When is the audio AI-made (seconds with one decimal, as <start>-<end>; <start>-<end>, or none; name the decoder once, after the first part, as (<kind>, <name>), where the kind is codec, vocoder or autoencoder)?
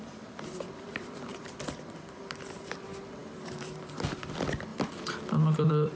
0.0-1.3 (vocoder, BigVGAN v2); 2.2-4.7; 5.6-6.0